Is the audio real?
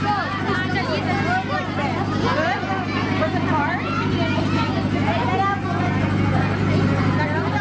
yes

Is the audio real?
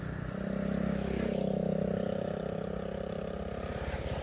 yes